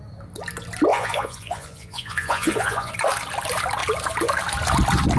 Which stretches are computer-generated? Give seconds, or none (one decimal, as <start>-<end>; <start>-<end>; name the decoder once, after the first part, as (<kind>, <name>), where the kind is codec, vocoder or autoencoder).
0.9-2.9 (vocoder, Vocos)